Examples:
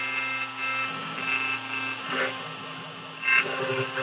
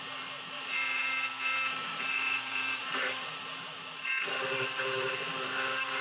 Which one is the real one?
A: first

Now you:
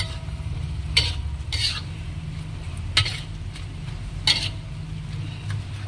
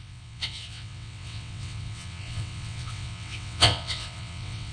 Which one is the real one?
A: first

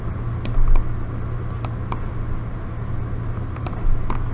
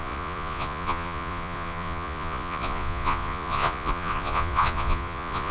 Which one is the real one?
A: first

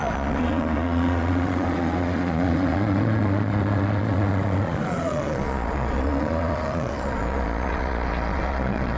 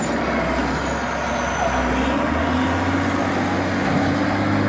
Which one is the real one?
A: second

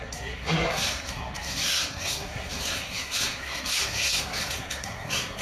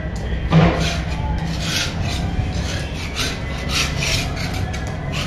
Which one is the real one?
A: second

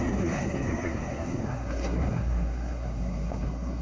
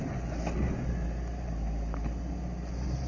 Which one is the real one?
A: second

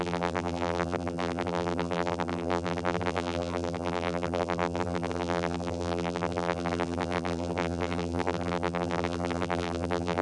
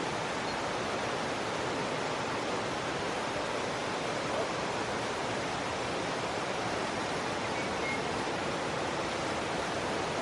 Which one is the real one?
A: second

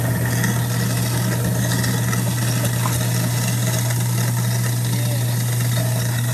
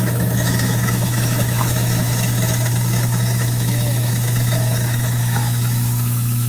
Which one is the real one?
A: first